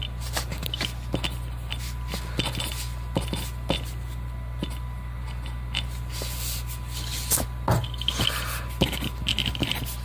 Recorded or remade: recorded